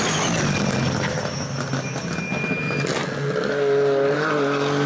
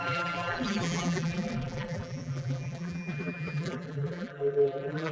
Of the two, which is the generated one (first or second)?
second